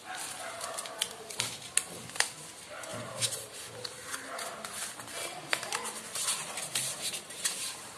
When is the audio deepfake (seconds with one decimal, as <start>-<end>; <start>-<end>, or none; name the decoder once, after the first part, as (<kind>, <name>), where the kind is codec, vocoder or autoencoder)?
2.9-3.5 (vocoder, BigVGAN v2); 6.6-8.0